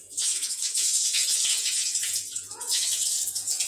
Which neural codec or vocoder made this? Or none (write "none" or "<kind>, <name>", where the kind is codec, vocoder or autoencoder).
vocoder, Vocos